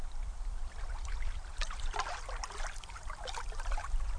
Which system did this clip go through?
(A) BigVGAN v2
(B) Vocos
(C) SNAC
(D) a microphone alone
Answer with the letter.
D